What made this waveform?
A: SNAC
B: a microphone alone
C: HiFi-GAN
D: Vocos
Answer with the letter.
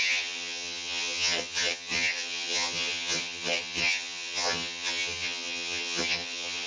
C